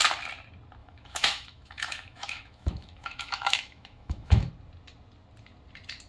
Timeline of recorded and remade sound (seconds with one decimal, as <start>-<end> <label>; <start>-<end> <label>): 0.0-0.8 recorded; 0.8-4.5 remade; 4.5-6.1 recorded